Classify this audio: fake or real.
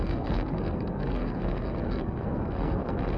fake